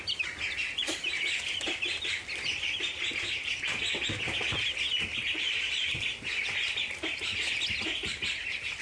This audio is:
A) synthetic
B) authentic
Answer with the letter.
B